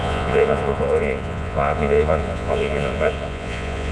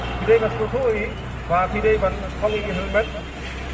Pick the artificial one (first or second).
first